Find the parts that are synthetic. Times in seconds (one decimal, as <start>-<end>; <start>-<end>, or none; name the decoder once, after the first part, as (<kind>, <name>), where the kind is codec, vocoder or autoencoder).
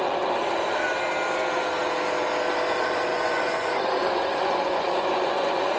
3.1-5.8 (vocoder, Vocos)